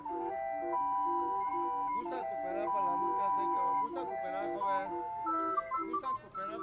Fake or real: real